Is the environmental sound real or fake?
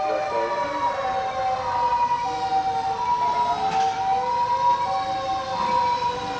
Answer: real